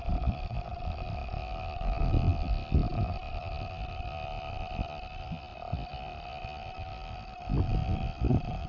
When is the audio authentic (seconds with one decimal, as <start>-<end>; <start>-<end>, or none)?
0.0-8.7